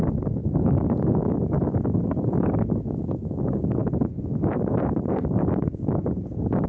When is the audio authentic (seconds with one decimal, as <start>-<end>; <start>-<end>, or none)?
3.8-5.6